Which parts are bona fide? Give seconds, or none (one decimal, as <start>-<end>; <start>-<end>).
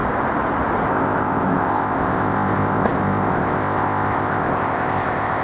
0.0-0.9